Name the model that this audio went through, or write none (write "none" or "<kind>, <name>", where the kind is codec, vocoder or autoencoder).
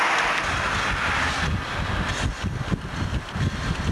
none